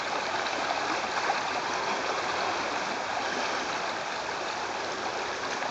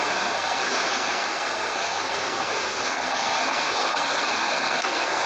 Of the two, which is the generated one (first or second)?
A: second